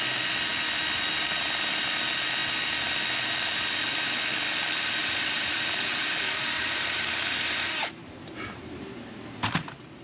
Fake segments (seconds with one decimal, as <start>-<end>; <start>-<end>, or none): 5.0-10.0